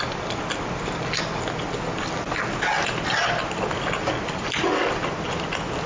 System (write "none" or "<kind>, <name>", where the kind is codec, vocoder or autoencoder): none